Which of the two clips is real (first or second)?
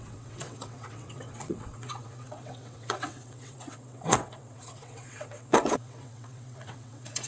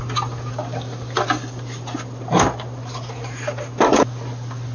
second